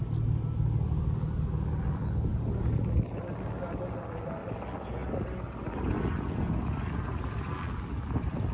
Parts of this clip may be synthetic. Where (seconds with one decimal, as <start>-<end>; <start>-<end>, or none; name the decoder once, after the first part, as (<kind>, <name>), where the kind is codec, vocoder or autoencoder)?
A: none